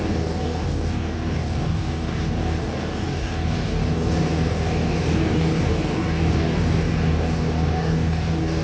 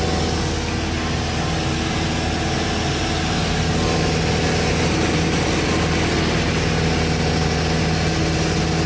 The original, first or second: second